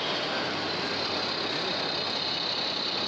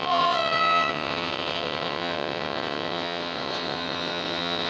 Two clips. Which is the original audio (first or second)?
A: first